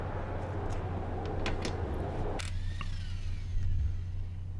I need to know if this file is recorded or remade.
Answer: recorded